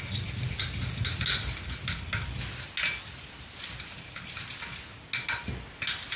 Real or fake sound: real